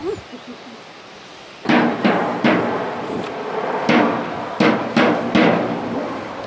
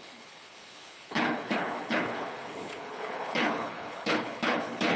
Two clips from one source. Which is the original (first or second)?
first